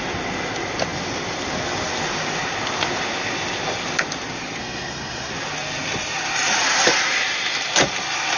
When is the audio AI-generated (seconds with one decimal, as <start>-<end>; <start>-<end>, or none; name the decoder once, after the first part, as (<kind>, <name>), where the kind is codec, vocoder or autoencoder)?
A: 4.6-5.3 (codec, SNAC)